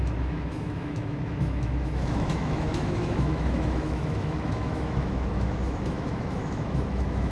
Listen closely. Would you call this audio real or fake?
fake